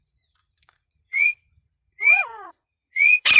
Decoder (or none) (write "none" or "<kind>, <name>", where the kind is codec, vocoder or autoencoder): vocoder, Vocos